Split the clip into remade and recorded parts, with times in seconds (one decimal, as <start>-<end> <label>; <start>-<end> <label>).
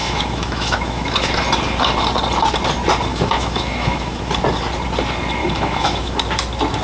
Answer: 0.0-1.3 remade; 1.3-3.1 recorded; 3.1-4.3 remade; 4.3-5.4 recorded; 5.4-6.2 remade; 6.2-6.8 recorded